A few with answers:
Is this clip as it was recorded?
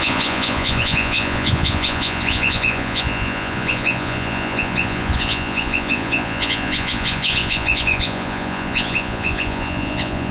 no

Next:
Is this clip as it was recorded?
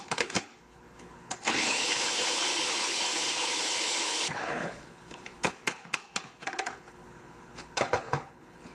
no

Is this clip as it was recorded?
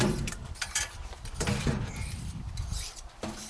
no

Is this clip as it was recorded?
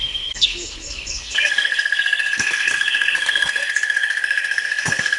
no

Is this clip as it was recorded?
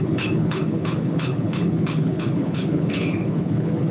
no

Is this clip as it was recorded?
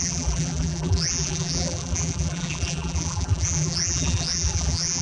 no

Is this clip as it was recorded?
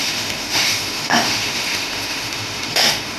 no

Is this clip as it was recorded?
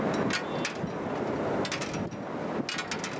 yes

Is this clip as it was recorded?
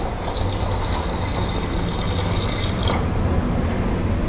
yes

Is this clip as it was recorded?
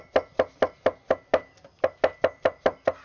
yes